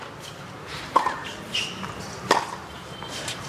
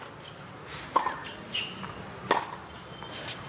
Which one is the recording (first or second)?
second